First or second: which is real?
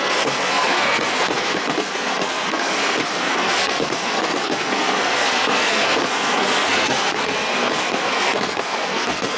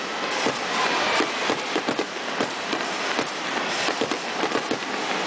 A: second